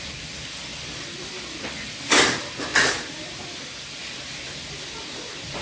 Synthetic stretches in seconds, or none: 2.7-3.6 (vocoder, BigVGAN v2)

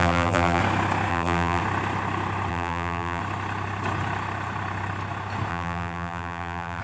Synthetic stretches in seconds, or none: 0.0-0.6 (vocoder, BigVGAN v2); 1.1-1.6; 2.5-3.2; 5.5-6.8

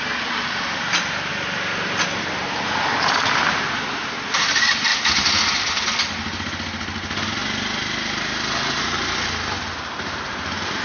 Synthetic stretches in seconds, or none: 0.0-1.3 (vocoder, BigVGAN v2); 3.0-4.9; 9.6-10.8

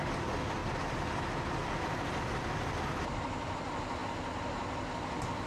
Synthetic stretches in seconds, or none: 0.6-3.6 (vocoder, BigVGAN v2)

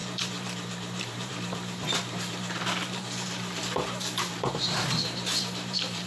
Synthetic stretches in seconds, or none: 0.0-6.1 (vocoder, BigVGAN v2)

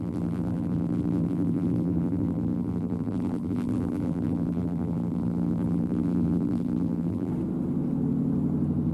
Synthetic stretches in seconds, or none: 0.0-7.3 (vocoder, BigVGAN v2)

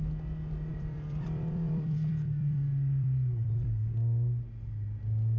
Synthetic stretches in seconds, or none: 0.7-3.9 (vocoder, BigVGAN v2)